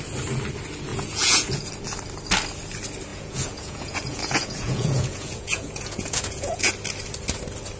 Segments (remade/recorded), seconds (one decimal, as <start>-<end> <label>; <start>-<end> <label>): 0.0-0.9 recorded; 0.9-1.7 remade; 1.7-3.1 recorded; 3.1-6.7 remade; 6.7-7.8 recorded